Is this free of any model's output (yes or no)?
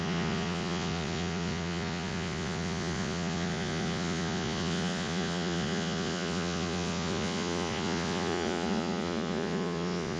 no